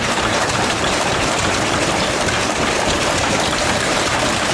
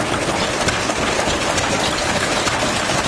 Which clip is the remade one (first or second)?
first